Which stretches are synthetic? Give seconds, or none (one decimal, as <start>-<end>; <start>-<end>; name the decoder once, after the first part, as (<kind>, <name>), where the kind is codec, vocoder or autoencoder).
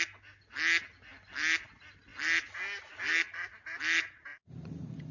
4.3-5.1 (vocoder, BigVGAN v2)